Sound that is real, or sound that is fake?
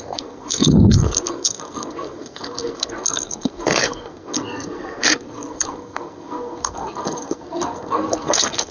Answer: fake